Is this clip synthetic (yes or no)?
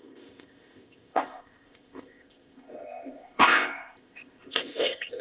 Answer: yes